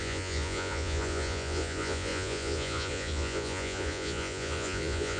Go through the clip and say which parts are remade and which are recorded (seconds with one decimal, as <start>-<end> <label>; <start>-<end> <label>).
0.0-5.2 remade